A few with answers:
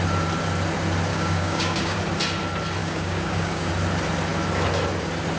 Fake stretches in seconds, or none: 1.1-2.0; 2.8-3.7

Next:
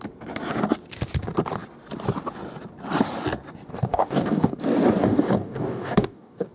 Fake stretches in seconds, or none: 3.7-4.6; 5.0-6.5